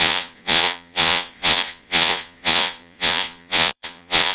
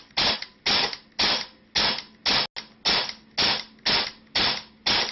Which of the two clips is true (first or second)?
second